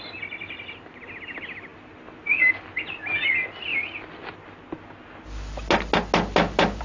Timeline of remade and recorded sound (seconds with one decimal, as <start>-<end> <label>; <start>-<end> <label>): 0.0-6.8 recorded